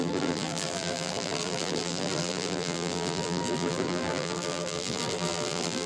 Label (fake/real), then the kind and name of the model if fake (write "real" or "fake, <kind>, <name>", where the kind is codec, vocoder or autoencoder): fake, vocoder, BigVGAN v2